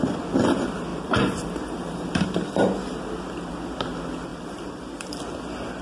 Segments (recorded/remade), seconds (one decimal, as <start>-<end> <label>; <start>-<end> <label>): 0.0-0.9 recorded; 0.9-2.4 remade; 2.4-4.3 recorded; 4.3-5.2 remade; 5.2-5.8 recorded